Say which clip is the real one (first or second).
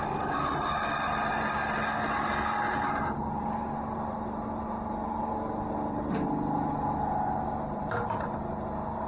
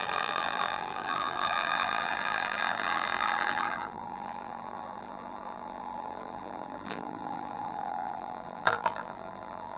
first